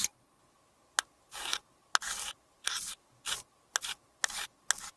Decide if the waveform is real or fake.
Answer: real